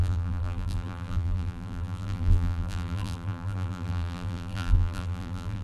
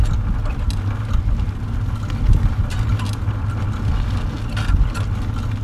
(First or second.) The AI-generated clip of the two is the first